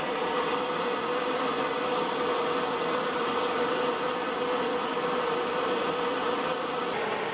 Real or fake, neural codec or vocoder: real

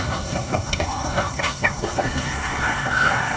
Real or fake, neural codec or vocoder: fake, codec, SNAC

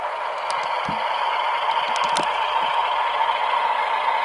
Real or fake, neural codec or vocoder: real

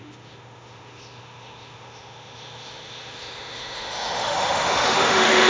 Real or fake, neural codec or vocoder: fake, autoencoder, DAC-VAE